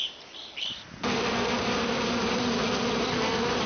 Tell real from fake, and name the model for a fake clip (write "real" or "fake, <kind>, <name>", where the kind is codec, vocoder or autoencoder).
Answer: real